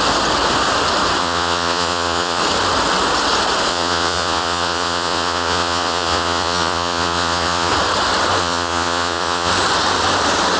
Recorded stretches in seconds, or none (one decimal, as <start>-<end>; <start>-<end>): 0.0-1.2; 2.4-3.7; 7.7-8.4; 9.5-10.6